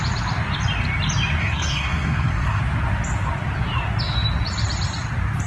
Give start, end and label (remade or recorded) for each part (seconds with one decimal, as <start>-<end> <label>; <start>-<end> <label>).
0.0-1.4 recorded; 1.4-2.6 remade; 2.6-5.5 recorded